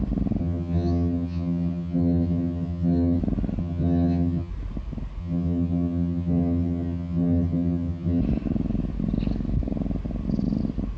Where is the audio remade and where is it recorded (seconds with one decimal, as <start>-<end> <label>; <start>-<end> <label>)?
0.0-0.4 recorded; 0.4-3.2 remade; 3.2-3.6 recorded; 3.6-4.5 remade; 4.5-5.2 recorded; 5.2-8.2 remade; 8.2-11.0 recorded